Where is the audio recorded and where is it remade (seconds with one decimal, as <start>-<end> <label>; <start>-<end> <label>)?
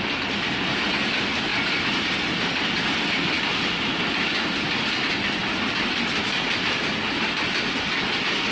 0.0-8.5 recorded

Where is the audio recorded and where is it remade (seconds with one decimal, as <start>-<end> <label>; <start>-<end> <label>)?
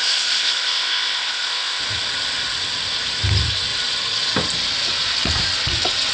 0.0-1.8 remade; 1.8-6.1 recorded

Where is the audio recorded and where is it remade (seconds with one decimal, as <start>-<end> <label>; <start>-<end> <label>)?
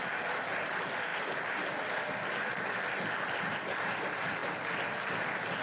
0.0-5.6 recorded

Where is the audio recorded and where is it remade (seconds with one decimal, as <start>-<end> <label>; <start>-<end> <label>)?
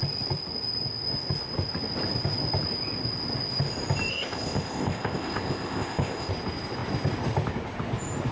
0.0-4.1 recorded; 4.1-6.3 remade; 6.3-8.3 recorded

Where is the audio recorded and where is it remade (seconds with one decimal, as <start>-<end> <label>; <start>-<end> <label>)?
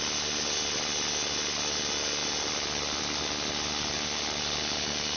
0.0-5.2 recorded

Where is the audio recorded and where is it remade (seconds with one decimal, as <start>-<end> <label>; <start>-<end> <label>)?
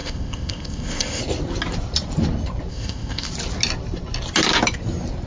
0.0-1.2 remade; 1.2-2.7 recorded; 2.7-3.3 remade; 3.3-5.3 recorded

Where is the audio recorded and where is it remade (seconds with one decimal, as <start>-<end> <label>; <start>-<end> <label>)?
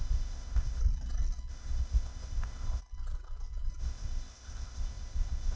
0.0-0.8 remade; 0.8-1.5 recorded; 1.5-2.8 remade; 2.8-3.8 recorded; 3.8-5.6 remade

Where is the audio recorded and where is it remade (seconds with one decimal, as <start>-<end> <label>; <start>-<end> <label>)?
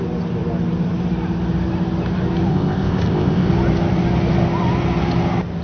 0.0-2.5 recorded; 2.5-3.5 remade; 3.5-5.6 recorded